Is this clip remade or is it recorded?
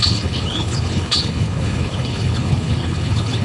remade